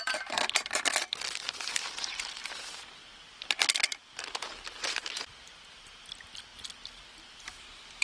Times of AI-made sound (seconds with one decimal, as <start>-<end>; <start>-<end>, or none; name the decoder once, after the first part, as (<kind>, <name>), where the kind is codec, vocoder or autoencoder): 0.0-6.5 (vocoder, BigVGAN v2); 7.2-8.0